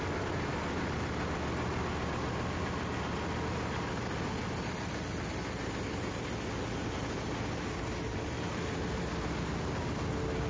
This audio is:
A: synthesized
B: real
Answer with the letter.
B